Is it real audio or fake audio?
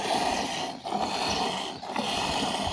real